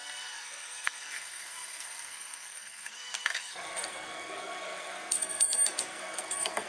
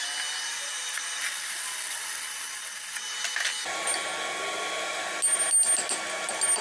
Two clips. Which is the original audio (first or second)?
second